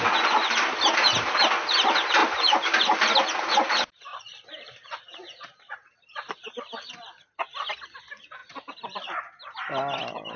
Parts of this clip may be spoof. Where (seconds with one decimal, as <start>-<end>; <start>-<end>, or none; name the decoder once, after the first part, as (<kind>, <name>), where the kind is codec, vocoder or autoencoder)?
2.2-3.1 (vocoder, BigVGAN v2); 4.1-6.9; 8.4-9.2